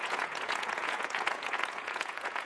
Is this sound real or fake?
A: fake